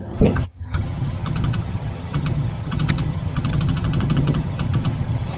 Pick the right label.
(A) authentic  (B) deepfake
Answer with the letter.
B